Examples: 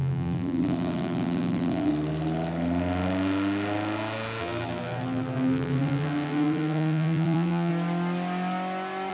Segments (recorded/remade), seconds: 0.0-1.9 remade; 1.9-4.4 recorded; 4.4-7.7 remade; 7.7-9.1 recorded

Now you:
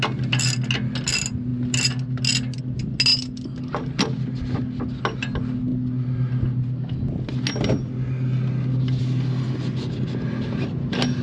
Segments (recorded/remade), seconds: 0.0-11.2 recorded

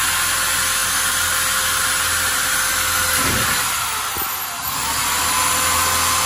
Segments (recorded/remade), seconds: 0.0-6.3 recorded